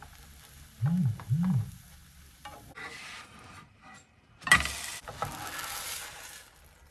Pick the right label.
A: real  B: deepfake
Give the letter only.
A